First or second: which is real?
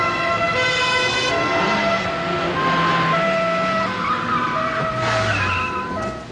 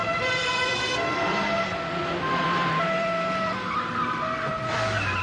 first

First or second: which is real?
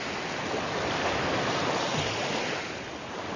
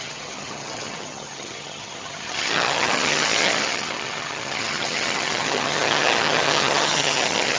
first